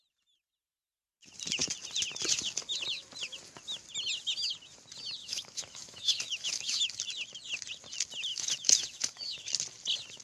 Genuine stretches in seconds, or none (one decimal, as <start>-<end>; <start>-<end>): 0.0-5.2; 7.0-8.3; 9.5-10.2